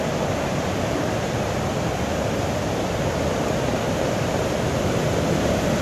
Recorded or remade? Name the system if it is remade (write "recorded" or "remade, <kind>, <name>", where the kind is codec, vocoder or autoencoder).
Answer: recorded